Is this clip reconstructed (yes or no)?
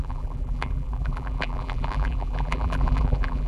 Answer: yes